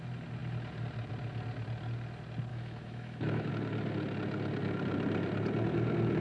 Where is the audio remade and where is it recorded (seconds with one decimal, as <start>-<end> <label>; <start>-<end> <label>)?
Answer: 0.0-2.5 recorded; 2.5-3.5 remade; 3.5-6.2 recorded